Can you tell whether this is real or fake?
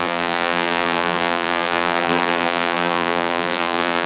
fake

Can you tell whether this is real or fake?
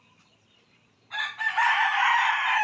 fake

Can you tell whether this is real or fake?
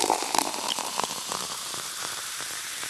fake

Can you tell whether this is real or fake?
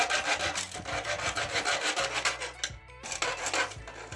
real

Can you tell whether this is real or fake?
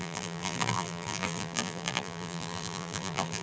fake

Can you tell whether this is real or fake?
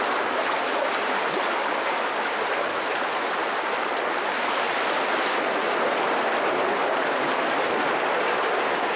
real